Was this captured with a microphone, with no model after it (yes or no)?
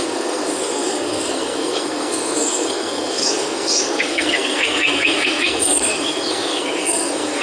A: no